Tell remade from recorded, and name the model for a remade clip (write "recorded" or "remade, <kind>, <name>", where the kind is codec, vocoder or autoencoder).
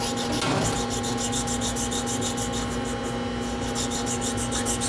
recorded